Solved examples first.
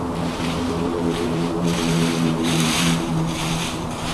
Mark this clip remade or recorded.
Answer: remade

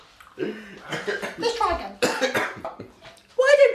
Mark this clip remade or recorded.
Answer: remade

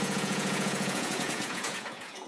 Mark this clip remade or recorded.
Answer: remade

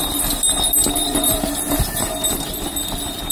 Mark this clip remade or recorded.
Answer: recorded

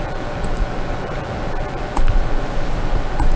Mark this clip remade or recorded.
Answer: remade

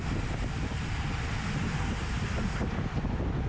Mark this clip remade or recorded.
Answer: recorded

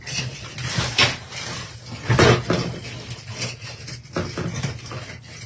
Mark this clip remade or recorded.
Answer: recorded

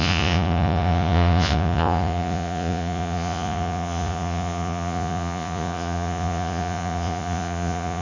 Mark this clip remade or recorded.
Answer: remade